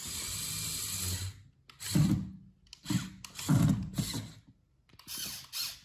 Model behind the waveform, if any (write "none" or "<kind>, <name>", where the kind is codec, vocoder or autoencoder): none